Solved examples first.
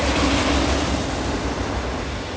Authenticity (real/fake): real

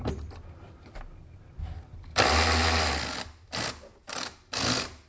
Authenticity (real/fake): real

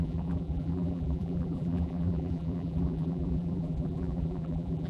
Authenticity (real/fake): fake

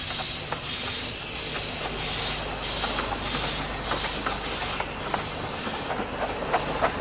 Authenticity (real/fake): real